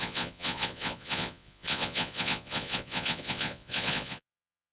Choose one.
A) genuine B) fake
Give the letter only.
B